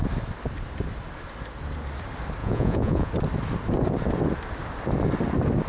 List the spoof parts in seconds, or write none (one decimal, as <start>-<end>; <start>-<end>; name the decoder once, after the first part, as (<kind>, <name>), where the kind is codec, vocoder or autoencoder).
2.4-3.1 (vocoder, Vocos)